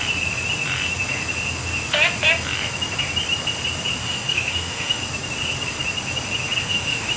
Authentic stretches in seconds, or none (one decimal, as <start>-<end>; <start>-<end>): 0.0-4.0; 5.0-6.6